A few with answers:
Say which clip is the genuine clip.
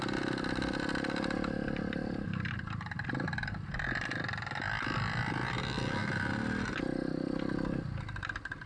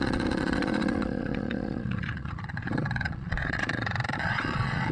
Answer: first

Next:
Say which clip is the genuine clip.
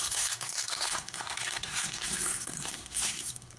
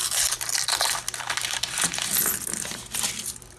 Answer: second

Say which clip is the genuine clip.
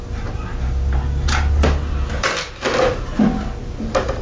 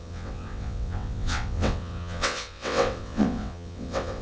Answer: first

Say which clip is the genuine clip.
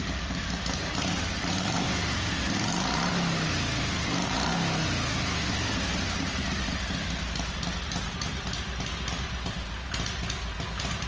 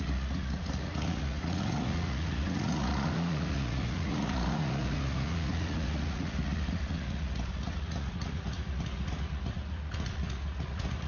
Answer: first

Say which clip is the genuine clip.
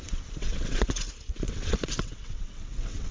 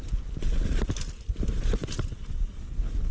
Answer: second